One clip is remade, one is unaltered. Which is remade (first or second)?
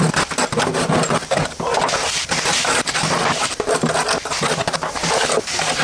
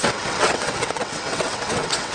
second